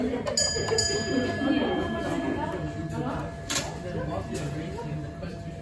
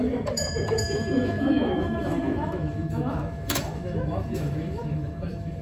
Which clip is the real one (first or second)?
first